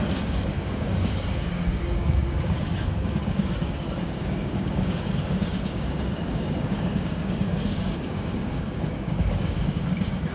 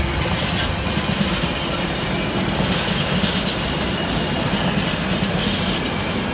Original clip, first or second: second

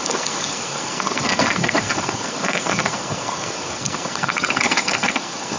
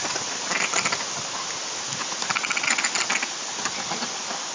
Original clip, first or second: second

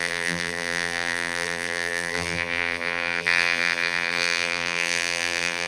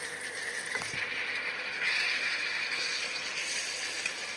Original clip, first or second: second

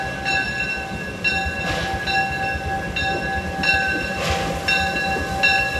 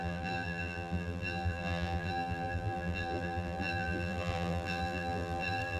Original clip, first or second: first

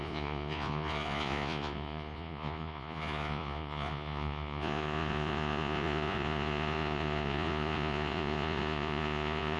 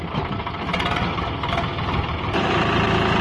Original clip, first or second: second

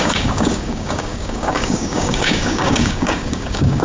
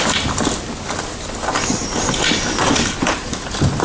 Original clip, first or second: second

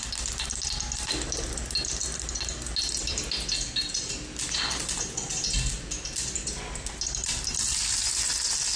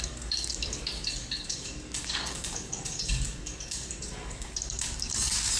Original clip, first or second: first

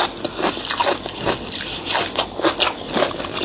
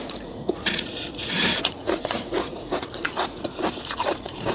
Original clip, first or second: first